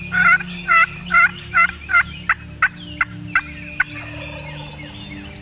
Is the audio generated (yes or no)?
no